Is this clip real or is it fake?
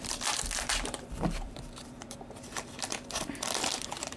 fake